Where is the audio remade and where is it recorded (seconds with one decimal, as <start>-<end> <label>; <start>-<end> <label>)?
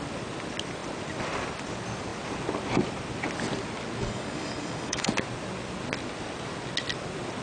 0.0-4.0 recorded; 4.0-5.1 remade; 5.1-7.4 recorded